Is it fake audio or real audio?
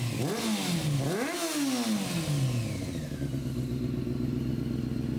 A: real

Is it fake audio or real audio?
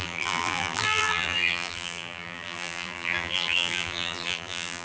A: fake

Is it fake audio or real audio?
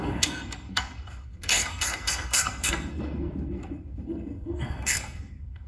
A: fake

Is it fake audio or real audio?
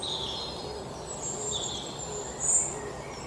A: real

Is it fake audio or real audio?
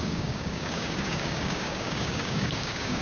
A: fake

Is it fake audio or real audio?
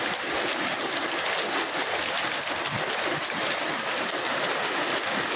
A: real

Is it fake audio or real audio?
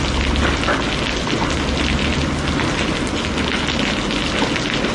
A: real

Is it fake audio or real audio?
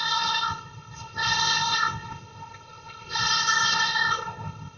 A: fake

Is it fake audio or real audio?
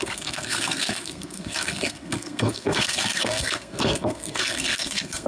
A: fake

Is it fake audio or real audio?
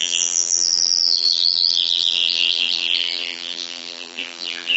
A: fake